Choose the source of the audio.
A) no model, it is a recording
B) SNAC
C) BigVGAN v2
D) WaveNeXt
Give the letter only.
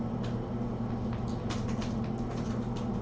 A